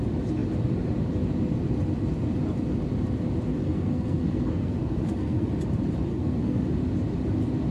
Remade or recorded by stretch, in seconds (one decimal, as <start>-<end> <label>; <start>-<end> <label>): 0.0-3.6 recorded; 3.6-5.5 remade; 5.5-6.1 recorded; 6.1-6.6 remade; 6.6-7.7 recorded